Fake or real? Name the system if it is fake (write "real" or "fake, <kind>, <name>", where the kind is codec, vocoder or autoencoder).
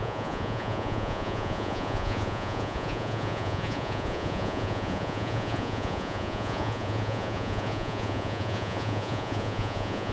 fake, vocoder, Vocos